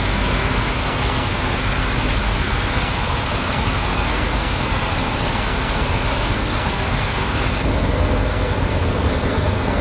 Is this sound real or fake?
fake